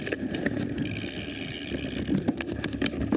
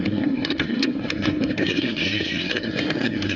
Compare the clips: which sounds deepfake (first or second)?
second